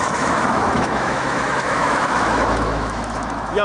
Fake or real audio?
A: fake